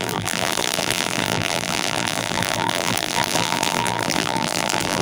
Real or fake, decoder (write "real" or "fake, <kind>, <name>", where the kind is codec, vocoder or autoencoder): fake, vocoder, BigVGAN v2